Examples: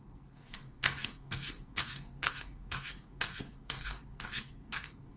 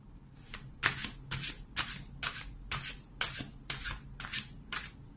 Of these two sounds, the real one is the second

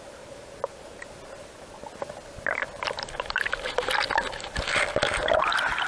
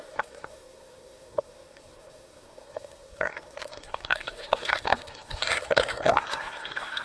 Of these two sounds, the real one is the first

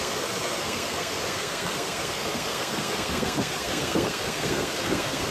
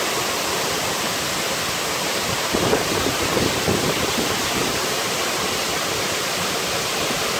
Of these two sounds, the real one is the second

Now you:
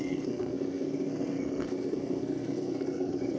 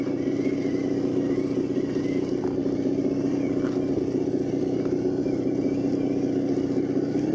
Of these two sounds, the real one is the second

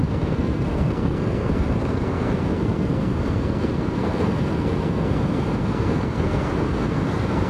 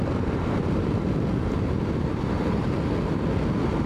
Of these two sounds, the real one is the second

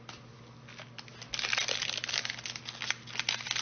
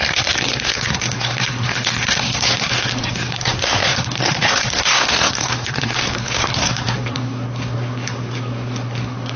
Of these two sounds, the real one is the first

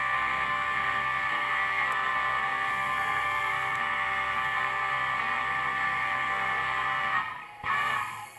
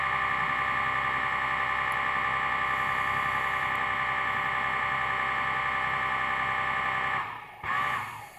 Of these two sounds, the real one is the second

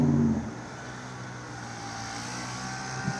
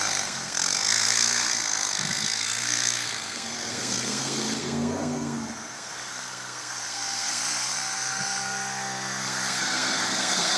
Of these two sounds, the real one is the first